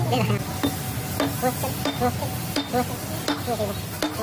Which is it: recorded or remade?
recorded